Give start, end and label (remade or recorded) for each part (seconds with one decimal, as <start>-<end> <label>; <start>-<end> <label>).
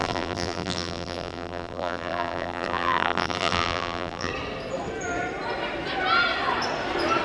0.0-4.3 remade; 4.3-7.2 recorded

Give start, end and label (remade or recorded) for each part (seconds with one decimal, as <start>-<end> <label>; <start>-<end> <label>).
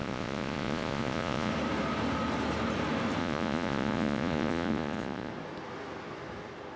0.0-1.5 remade; 1.5-3.2 recorded; 3.2-5.3 remade; 5.3-6.8 recorded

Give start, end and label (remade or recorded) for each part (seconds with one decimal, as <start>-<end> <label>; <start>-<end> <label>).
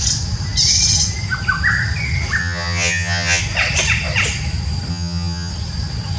0.0-2.4 recorded; 2.4-3.4 remade; 3.4-4.9 recorded; 4.9-5.5 remade; 5.5-6.2 recorded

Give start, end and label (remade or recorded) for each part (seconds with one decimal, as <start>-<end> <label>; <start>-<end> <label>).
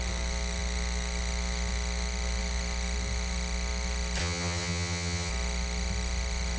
0.0-4.2 recorded; 4.2-5.3 remade; 5.3-6.6 recorded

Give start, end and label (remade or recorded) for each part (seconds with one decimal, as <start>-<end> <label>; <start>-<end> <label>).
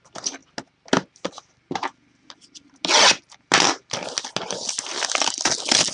0.0-5.9 recorded